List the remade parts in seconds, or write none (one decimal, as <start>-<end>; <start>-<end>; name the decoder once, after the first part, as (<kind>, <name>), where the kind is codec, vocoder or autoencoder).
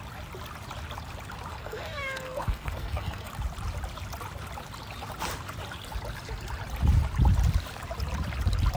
1.5-3.3 (codec, SNAC)